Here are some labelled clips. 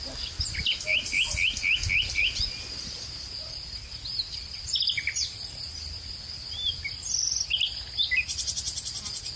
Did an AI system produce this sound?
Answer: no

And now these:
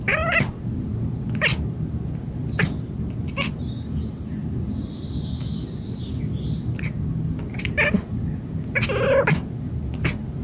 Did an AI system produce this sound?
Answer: no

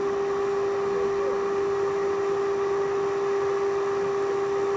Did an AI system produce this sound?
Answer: no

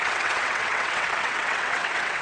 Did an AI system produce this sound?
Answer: yes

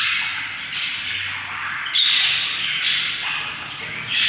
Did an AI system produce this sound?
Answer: no